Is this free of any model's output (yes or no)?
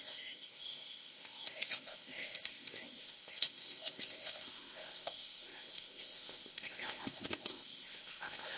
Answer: no